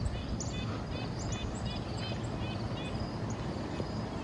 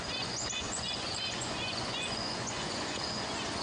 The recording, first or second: first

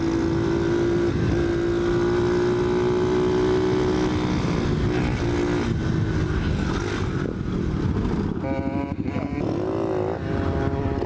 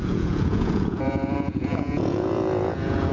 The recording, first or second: first